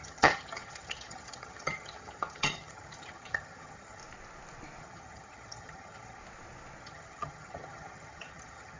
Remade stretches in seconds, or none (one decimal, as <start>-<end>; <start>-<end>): 0.0-4.0; 4.8-6.2; 6.8-8.8